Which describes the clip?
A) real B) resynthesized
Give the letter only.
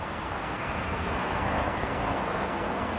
B